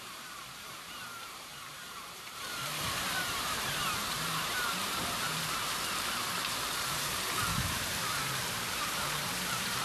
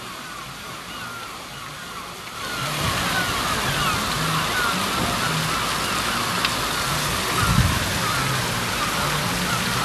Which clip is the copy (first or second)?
first